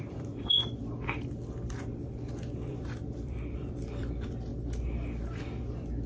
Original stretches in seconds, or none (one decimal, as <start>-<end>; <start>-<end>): 0.8-2.7; 4.5-6.1